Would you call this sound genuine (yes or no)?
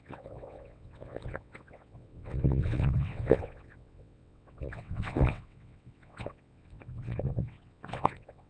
no